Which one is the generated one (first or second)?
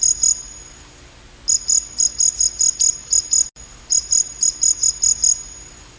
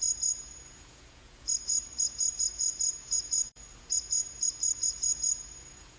second